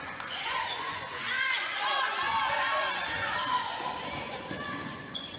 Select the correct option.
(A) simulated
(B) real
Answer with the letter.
A